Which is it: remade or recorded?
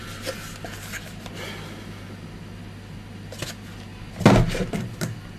recorded